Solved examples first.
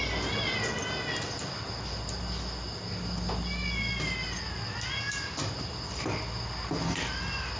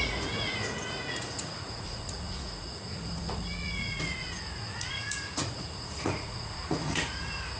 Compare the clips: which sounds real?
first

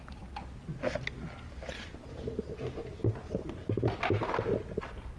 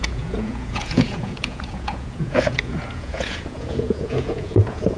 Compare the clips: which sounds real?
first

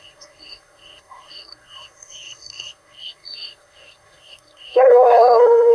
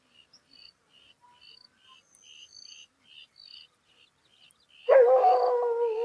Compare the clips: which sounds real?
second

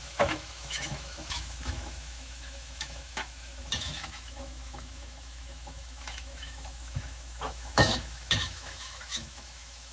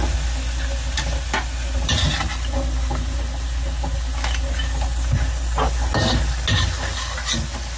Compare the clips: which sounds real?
second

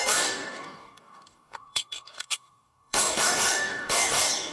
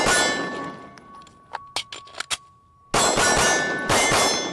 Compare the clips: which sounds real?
second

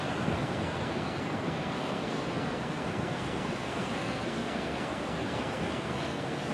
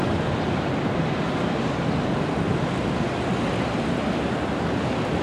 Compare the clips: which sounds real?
second